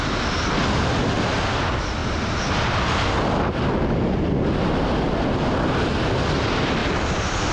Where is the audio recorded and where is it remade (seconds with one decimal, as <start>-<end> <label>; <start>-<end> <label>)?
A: 0.0-7.5 recorded